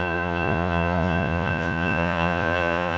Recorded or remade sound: remade